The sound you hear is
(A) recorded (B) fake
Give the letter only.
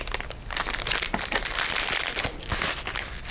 A